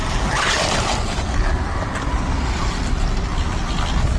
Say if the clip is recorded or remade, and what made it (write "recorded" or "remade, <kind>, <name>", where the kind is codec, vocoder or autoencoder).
recorded